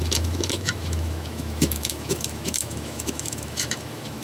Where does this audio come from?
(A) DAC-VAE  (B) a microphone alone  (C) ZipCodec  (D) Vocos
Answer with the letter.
A